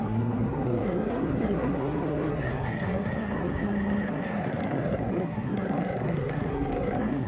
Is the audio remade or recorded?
remade